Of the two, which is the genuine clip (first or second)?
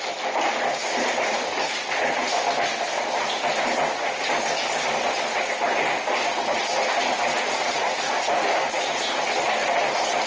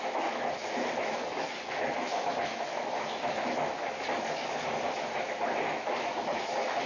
first